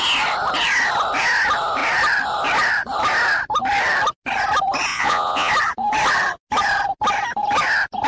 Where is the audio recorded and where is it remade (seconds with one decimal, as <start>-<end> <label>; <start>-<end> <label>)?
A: 0.0-4.9 recorded; 4.9-5.5 remade; 5.5-8.1 recorded